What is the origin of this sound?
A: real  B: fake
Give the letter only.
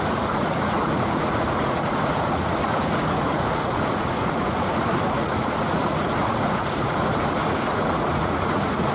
B